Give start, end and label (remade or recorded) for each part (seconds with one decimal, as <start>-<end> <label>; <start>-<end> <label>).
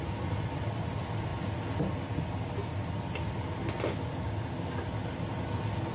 0.0-5.9 recorded